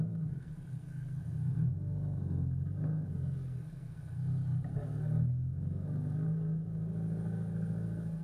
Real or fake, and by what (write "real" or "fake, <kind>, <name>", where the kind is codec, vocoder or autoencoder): fake, codec, SNAC